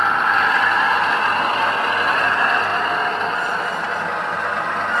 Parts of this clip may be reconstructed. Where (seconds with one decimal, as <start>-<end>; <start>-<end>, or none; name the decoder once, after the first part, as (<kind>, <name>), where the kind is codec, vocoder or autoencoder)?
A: none